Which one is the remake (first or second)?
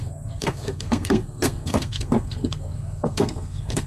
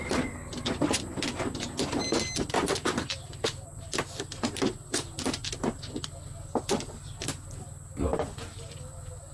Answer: first